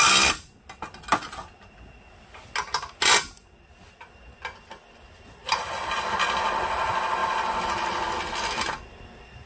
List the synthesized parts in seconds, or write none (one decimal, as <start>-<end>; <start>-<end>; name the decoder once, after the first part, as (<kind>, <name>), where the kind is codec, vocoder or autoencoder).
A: none